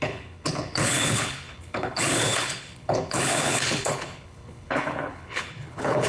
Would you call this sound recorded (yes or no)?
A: no